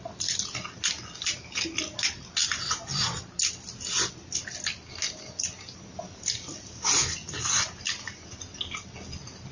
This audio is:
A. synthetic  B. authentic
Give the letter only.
B